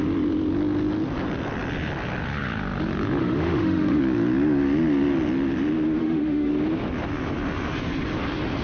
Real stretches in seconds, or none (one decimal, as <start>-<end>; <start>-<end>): 0.0-3.2; 4.0-6.0; 6.5-8.6